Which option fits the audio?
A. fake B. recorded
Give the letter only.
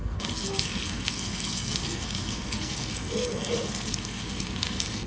A